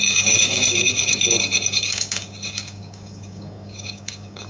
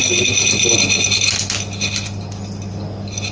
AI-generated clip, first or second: first